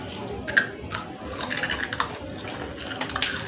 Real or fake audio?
real